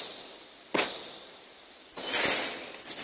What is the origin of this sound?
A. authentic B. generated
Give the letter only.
A